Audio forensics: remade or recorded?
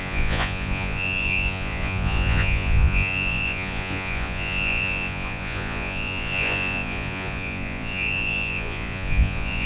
remade